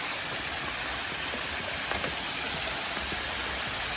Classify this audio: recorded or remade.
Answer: recorded